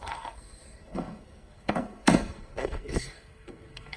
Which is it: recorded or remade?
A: remade